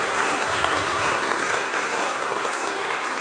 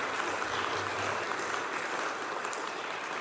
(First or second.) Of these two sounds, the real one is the second